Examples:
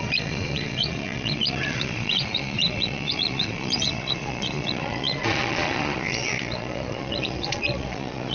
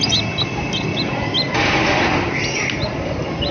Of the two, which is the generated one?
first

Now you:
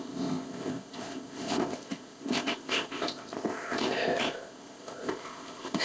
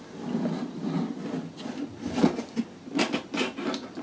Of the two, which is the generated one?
first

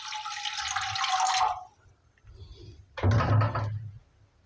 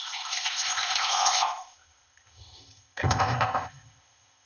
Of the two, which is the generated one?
second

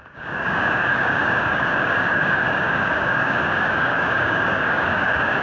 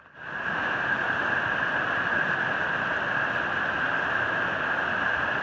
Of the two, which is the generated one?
first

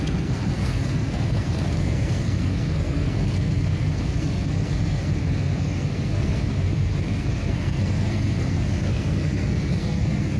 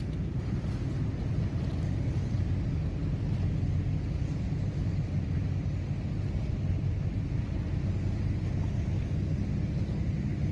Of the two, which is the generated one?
first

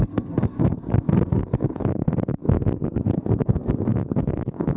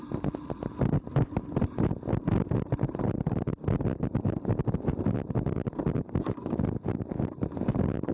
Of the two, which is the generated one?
first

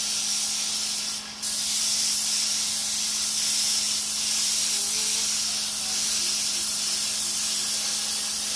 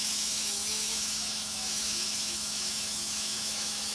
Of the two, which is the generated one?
second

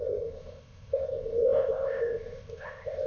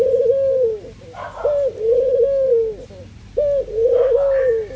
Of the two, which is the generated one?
first